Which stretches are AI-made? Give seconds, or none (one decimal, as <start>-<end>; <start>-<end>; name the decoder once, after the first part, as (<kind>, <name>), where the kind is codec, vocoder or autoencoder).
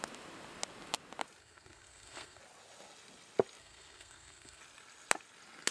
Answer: 1.4-2.4 (codec, SNAC); 3.6-4.6